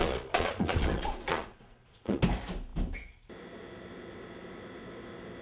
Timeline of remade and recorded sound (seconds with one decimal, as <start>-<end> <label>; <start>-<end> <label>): 0.0-2.2 remade; 2.2-5.4 recorded